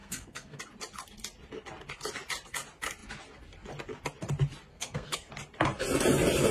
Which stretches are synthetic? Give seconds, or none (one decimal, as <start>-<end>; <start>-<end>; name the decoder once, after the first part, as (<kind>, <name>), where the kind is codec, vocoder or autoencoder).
0.0-0.6 (codec, SNAC); 4.7-5.3